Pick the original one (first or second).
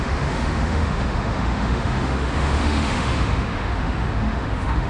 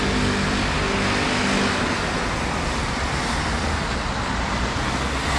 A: second